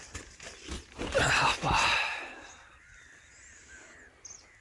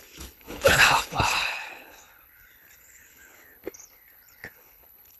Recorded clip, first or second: first